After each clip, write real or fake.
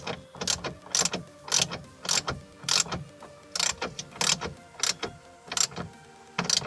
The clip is real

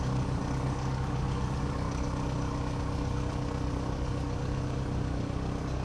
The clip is fake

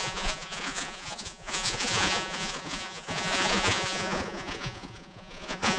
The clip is fake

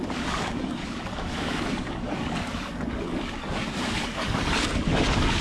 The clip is fake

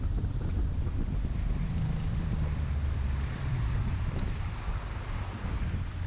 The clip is fake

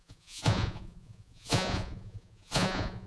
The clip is fake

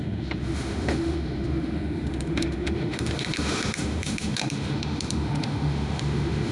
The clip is fake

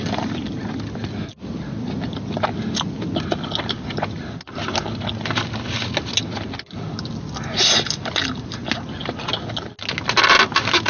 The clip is real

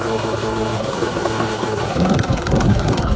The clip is fake